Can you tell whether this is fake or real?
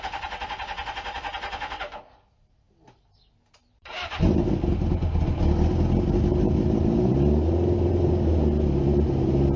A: real